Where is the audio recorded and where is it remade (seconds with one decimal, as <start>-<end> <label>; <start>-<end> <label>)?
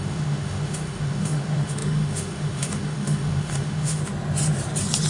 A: 0.0-4.0 remade; 4.0-5.1 recorded